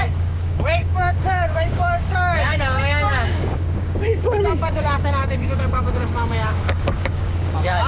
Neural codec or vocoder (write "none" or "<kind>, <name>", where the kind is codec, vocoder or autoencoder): codec, DAC